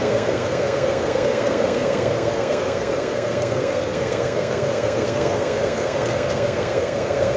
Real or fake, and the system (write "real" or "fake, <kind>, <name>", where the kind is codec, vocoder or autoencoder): fake, codec, SNAC